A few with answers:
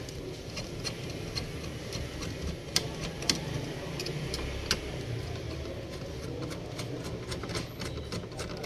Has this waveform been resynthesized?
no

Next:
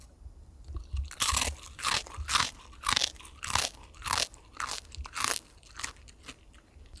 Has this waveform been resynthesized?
no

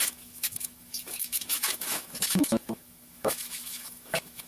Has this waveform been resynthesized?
yes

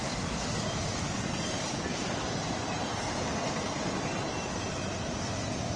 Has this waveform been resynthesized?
no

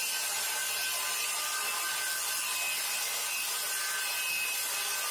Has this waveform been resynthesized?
no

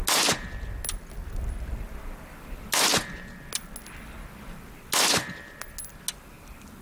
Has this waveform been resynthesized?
no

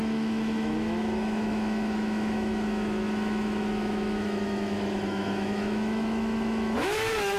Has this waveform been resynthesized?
yes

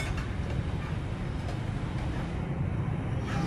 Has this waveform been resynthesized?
no